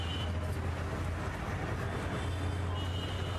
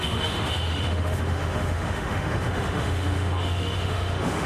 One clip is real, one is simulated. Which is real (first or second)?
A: first